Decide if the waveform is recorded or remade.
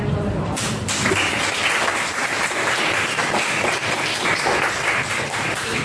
recorded